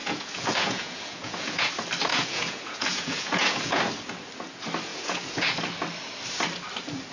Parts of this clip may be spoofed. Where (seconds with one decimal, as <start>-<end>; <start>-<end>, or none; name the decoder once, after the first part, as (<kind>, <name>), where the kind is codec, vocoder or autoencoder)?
0.0-1.7 (vocoder, Vocos); 2.1-3.8; 4.9-5.6